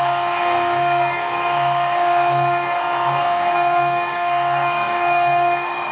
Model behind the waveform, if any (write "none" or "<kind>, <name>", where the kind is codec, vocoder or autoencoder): codec, SNAC